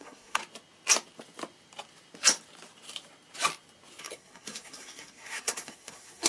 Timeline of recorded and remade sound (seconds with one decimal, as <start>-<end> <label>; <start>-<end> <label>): 0.0-0.4 remade; 0.4-4.0 recorded; 4.0-6.3 remade